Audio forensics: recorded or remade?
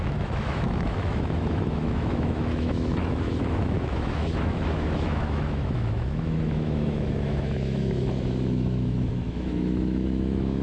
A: remade